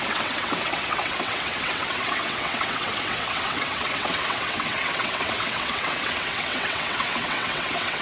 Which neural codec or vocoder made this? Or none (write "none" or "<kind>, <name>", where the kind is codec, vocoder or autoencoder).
vocoder, WaveNeXt